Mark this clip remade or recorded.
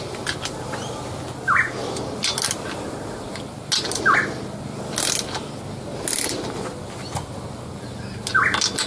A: recorded